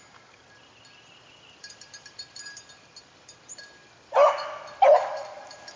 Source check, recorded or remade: remade